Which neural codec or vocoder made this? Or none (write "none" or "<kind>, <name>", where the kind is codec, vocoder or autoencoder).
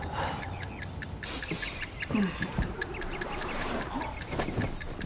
none